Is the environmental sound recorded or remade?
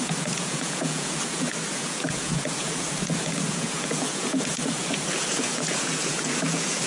remade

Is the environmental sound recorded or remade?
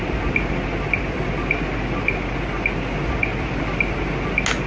recorded